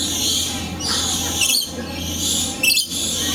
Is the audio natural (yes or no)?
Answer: yes